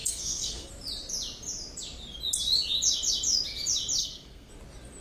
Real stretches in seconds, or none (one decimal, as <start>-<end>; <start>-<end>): 0.7-4.0; 4.5-5.0